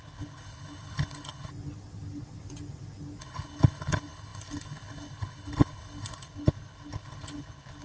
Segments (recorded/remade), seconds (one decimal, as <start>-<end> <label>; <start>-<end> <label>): 0.0-1.5 remade; 1.5-3.2 recorded; 3.2-7.8 remade